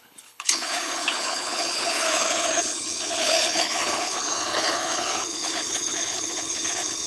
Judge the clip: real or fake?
fake